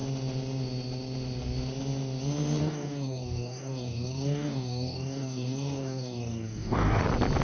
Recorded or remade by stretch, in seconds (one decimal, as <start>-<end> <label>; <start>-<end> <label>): 0.0-2.6 recorded; 2.6-7.0 remade; 7.0-7.4 recorded